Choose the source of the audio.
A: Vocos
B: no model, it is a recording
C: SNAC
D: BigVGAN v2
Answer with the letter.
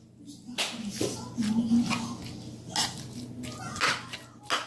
B